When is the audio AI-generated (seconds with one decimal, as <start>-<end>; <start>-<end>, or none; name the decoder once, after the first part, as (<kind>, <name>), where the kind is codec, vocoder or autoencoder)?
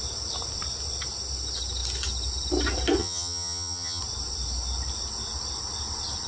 3.0-4.0 (vocoder, HiFi-GAN)